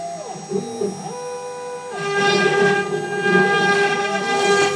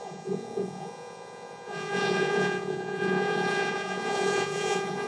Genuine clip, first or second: first